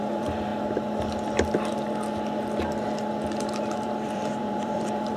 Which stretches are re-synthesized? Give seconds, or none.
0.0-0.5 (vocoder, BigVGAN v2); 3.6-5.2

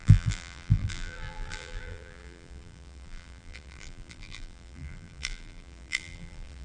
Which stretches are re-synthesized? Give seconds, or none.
0.0-6.6 (vocoder, BigVGAN v2)

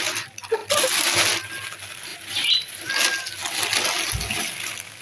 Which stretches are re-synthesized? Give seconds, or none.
2.1-2.9 (vocoder, BigVGAN v2)

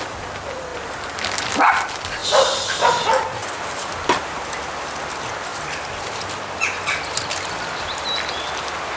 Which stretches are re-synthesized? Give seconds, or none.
0.7-1.7 (vocoder, BigVGAN v2); 2.2-2.9; 3.4-3.9; 5.5-7.5

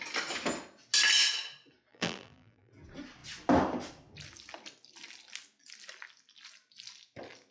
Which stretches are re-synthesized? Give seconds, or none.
1.9-2.7 (vocoder, BigVGAN v2)

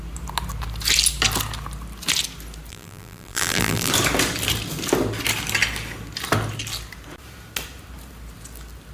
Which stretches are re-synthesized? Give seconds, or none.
2.7-3.9 (vocoder, BigVGAN v2)